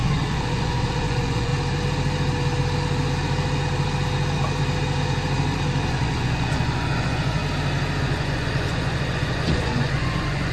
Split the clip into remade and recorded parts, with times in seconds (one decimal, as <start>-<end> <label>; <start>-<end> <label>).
0.0-1.5 remade; 1.5-5.9 recorded; 5.9-7.4 remade; 7.4-8.0 recorded; 8.0-10.5 remade